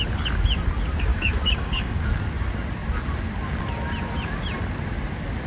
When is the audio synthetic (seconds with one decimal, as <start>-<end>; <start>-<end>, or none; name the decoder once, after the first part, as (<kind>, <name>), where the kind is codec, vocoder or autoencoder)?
1.1-2.0 (codec, DAC)